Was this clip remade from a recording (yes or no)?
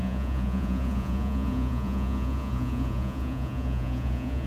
yes